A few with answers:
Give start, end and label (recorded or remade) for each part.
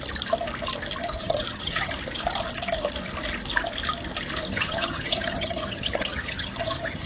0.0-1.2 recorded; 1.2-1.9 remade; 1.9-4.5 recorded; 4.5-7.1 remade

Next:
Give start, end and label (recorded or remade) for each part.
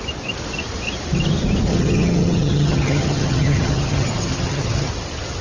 0.0-1.7 recorded; 1.7-4.9 remade; 4.9-5.4 recorded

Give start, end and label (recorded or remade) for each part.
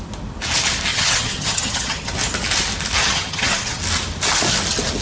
0.0-0.9 recorded; 0.9-2.1 remade; 2.1-3.0 recorded; 3.0-3.8 remade; 3.8-5.0 recorded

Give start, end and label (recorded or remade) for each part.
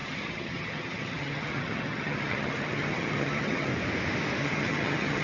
0.0-3.7 remade; 3.7-4.4 recorded; 4.4-5.2 remade